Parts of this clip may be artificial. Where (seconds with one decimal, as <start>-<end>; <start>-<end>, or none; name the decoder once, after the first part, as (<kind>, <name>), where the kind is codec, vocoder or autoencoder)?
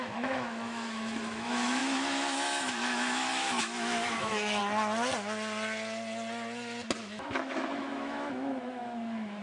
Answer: 0.0-4.6 (autoencoder, DAC-VAE); 7.0-9.4